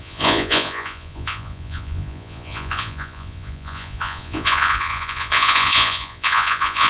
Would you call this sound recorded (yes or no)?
no